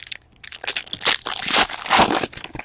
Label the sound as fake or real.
real